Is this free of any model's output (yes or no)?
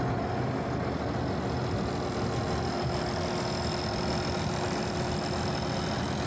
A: yes